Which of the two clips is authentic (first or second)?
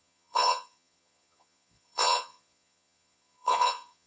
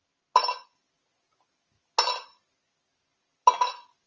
second